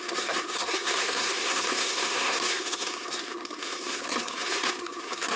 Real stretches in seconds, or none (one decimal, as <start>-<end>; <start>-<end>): none